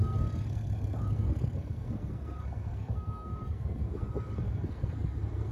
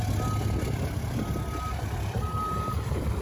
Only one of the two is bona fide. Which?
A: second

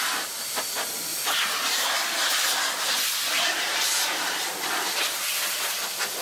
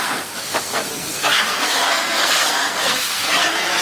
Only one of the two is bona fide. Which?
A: first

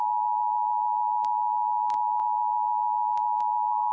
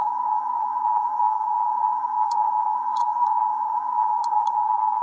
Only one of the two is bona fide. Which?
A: first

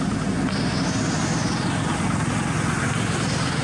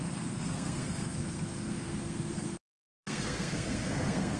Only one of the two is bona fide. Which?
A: first